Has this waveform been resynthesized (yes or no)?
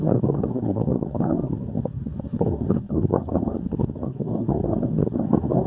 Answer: yes